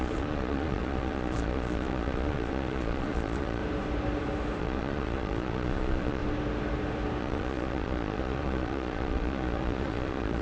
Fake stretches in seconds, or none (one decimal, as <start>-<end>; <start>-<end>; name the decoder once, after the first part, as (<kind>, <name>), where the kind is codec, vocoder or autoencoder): 0.0-3.6 (vocoder, Vocos); 4.6-6.2; 7.2-10.4